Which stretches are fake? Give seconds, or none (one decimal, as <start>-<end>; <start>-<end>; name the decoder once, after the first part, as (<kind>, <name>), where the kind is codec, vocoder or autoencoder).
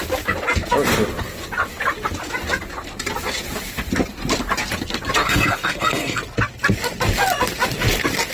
5.2-6.2 (codec, SNAC)